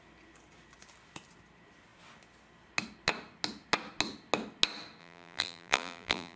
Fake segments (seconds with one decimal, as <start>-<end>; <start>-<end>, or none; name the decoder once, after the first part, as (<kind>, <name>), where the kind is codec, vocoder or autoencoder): 5.0-6.4 (vocoder, BigVGAN v2)